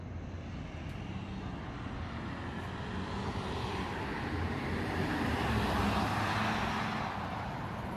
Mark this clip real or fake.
real